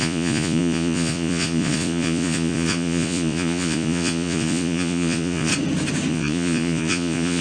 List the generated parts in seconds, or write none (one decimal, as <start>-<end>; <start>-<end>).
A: 0.0-5.5; 6.1-7.4

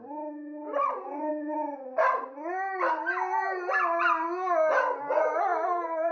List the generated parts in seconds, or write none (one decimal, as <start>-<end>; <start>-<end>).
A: 0.7-1.3; 5.5-6.1

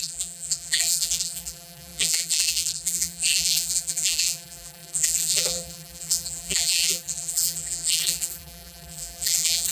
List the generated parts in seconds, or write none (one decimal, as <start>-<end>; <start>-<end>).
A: 0.0-9.7

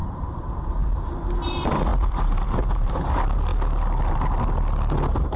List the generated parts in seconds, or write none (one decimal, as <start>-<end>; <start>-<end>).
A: 0.0-0.6; 1.9-3.0

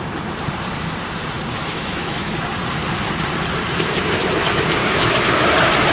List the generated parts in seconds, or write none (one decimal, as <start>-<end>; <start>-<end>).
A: 1.6-2.3; 4.8-5.5

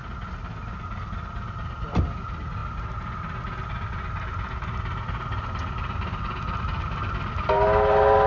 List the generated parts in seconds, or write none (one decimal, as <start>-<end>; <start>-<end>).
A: none

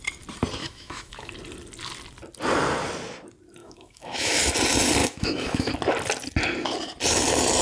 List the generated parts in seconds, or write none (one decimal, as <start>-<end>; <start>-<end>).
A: 0.6-1.3; 3.6-4.4; 5.0-5.7